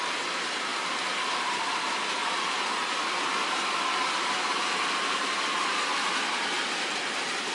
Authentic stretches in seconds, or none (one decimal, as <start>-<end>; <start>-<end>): 0.0-0.7; 5.0-7.5